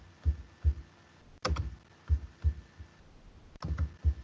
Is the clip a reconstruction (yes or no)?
no